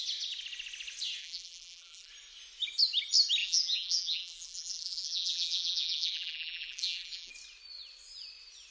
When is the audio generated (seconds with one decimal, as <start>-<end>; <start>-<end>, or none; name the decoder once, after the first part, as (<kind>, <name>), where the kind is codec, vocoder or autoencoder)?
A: 1.2-2.1 (vocoder, BigVGAN v2); 3.4-7.3